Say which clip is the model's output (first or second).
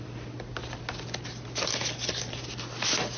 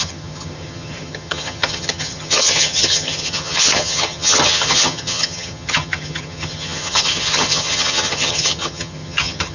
second